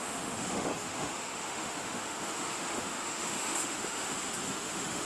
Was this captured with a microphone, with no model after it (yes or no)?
no